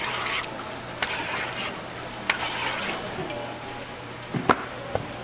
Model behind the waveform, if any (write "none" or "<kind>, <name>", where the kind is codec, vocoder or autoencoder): none